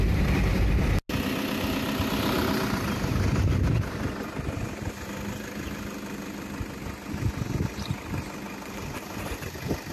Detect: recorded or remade recorded